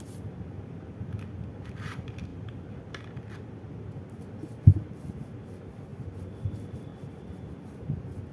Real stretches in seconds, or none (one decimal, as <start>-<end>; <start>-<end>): 0.0-8.3